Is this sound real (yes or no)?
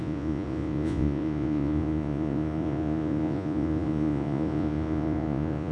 no